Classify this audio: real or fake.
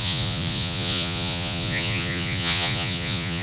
fake